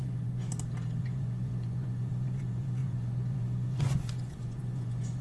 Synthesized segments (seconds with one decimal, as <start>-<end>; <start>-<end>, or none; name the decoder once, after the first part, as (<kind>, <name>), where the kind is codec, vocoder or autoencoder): 0.0-0.5 (vocoder, Vocos); 1.0-5.2